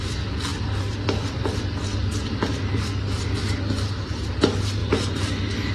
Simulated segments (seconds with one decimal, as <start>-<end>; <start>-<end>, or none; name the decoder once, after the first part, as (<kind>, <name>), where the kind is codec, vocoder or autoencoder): 0.5-1.6 (vocoder, BigVGAN v2); 2.0-3.4; 4.8-5.7